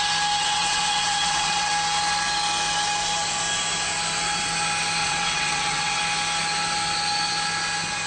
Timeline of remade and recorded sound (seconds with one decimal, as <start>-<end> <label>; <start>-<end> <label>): 0.0-0.4 recorded; 0.4-1.7 remade; 1.7-5.0 recorded; 5.0-6.0 remade; 6.0-8.1 recorded